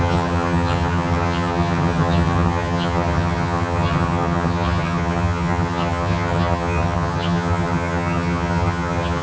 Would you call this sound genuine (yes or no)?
no